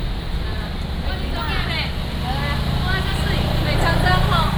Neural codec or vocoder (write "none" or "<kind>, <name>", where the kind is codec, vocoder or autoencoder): none